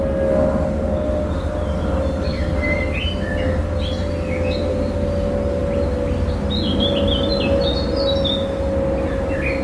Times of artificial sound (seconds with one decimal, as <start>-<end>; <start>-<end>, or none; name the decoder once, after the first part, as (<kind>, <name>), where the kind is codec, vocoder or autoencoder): none